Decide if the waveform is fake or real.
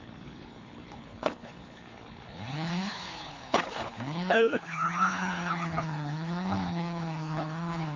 fake